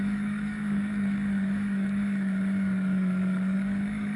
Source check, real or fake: fake